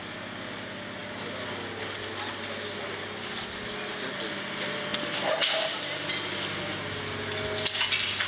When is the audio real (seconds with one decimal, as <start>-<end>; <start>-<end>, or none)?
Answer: 0.0-8.3